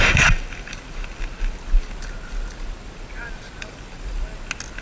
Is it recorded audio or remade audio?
recorded